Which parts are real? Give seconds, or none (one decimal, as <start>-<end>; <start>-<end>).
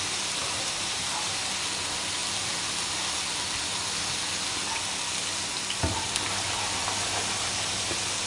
0.0-0.4; 1.4-8.3